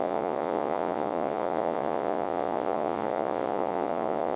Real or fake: fake